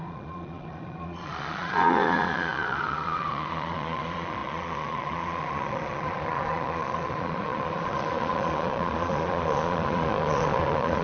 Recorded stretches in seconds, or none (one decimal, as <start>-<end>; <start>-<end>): none